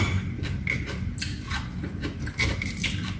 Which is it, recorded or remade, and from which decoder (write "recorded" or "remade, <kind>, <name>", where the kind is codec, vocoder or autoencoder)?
recorded